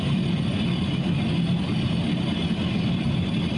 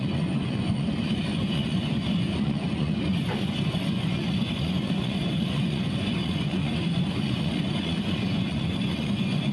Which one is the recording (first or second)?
first